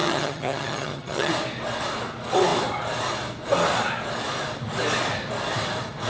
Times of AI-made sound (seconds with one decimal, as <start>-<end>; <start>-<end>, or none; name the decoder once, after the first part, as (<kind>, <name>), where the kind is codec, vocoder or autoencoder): 0.0-1.3 (vocoder, HiFi-GAN)

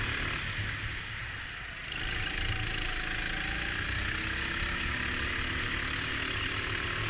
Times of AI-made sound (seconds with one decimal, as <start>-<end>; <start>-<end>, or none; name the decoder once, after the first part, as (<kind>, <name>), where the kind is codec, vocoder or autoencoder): none

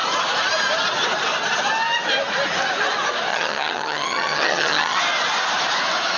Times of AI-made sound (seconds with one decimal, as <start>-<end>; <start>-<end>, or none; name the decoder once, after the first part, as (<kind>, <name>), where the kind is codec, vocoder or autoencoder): 3.3-5.0 (vocoder, HiFi-GAN)